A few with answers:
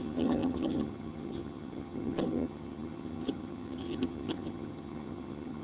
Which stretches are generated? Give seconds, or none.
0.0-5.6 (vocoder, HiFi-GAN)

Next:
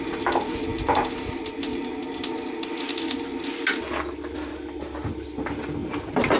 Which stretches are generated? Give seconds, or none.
none

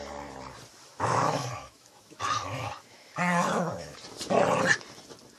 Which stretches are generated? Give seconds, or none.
0.8-4.0 (autoencoder, DAC-VAE)

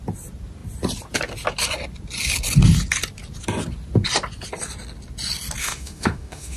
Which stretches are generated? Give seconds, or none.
5.6-6.6 (autoencoder, DAC-VAE)